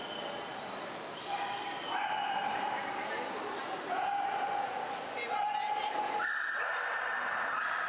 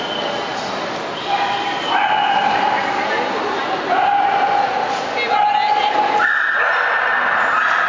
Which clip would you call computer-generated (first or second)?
first